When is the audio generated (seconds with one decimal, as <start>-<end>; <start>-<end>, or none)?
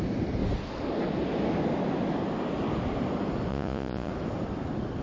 3.5-4.1